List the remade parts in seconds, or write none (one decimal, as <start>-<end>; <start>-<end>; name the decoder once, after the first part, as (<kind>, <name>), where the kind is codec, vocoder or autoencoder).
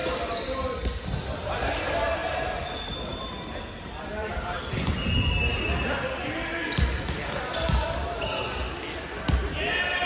none